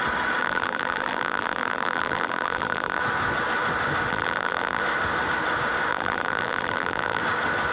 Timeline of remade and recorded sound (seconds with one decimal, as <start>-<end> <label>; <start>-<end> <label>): 0.0-0.4 recorded; 0.4-3.0 remade; 3.0-4.1 recorded; 4.1-4.8 remade; 4.8-5.9 recorded; 5.9-7.2 remade; 7.2-7.7 recorded